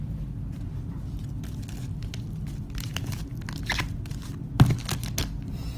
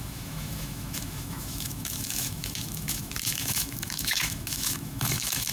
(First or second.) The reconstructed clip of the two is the second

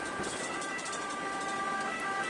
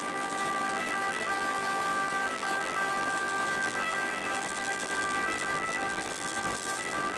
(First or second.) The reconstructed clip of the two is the second